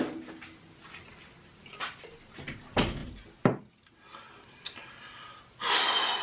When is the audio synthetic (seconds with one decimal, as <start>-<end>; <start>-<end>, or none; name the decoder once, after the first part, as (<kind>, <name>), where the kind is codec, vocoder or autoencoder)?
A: none